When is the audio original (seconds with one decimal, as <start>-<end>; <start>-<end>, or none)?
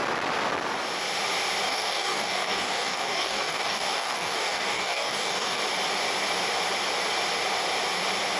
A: 0.0-1.7; 5.6-8.4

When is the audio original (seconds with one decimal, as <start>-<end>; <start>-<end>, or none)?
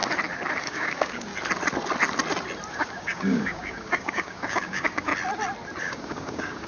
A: 0.0-0.6; 1.3-2.7; 5.1-5.8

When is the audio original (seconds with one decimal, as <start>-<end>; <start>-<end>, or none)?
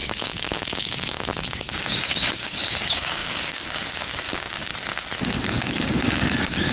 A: 4.7-5.3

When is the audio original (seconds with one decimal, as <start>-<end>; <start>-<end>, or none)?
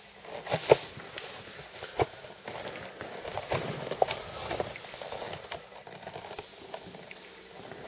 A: 0.0-7.9